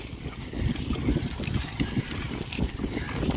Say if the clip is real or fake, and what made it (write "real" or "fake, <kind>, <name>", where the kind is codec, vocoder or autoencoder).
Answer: real